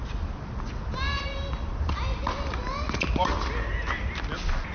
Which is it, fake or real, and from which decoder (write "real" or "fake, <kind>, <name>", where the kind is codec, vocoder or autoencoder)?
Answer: real